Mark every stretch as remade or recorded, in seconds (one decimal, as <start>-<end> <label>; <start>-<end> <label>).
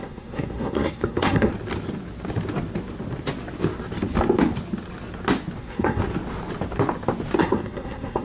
0.0-1.5 remade; 1.5-5.6 recorded; 5.6-6.0 remade; 6.0-7.4 recorded; 7.4-8.2 remade